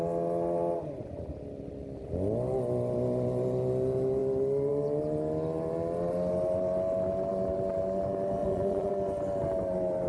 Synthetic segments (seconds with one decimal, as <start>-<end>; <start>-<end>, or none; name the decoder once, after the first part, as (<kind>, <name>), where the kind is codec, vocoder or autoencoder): 8.4-8.9 (vocoder, Vocos)